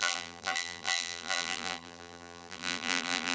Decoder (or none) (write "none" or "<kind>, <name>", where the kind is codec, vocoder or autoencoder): vocoder, BigVGAN v2